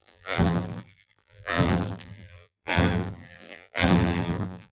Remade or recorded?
remade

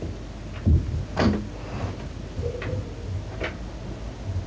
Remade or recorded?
recorded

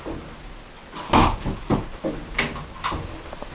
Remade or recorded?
recorded